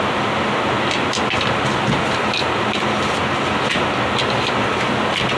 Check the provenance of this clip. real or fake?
real